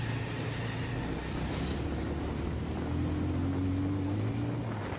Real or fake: real